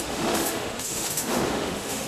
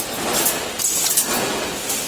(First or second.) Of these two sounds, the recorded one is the second